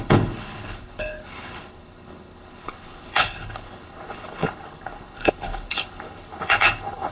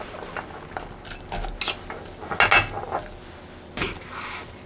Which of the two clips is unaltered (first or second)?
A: second